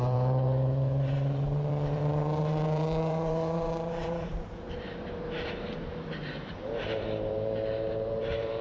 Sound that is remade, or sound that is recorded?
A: remade